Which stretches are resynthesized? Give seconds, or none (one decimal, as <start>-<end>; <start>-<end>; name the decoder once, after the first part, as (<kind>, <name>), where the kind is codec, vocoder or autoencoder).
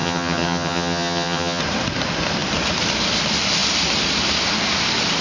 0.0-1.6 (vocoder, HiFi-GAN)